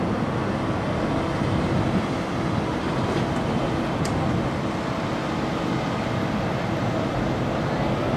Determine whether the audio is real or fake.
real